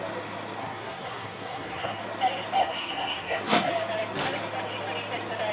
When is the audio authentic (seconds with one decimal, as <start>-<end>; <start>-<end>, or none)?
0.0-0.6; 2.0-2.6; 3.7-5.5